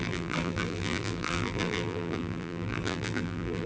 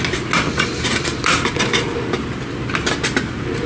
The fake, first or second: first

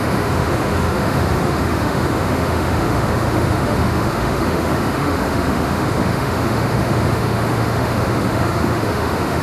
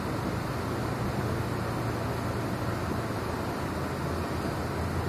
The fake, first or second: first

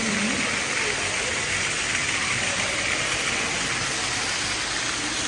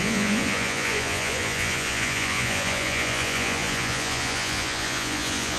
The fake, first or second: second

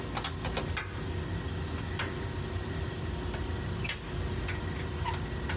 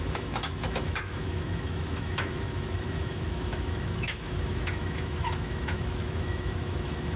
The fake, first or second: second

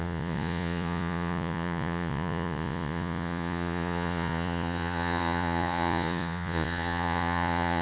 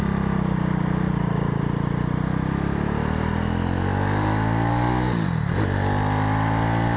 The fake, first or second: first